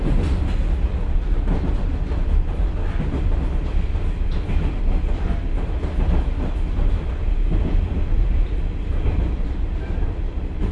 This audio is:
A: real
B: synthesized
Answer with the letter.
A